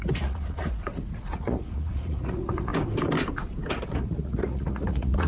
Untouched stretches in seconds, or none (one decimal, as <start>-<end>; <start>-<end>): 2.7-3.7